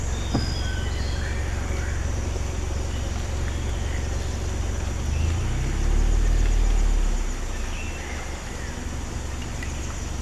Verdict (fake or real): real